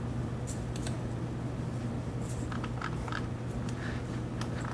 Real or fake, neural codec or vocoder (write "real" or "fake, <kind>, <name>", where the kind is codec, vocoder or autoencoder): real